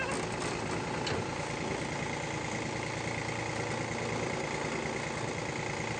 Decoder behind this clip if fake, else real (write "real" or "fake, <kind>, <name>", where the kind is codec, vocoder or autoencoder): real